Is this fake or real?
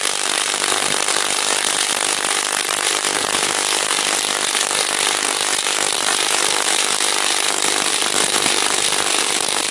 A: fake